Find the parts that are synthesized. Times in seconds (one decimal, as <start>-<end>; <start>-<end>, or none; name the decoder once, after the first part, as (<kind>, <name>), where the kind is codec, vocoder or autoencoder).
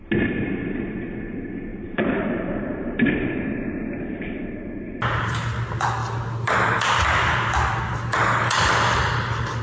1.7-3.1 (vocoder, BigVGAN v2)